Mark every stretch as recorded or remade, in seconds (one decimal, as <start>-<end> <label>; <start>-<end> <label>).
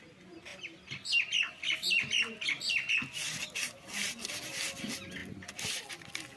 0.0-6.4 recorded